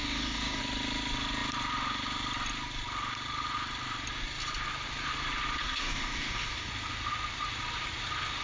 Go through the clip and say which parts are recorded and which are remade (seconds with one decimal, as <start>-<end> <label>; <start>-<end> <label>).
0.0-0.6 remade; 0.6-5.6 recorded; 5.6-6.7 remade; 6.7-8.4 recorded